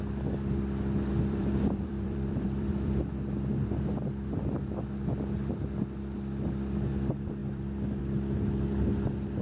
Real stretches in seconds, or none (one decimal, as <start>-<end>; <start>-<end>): 0.0-1.1; 3.0-7.4; 8.0-9.4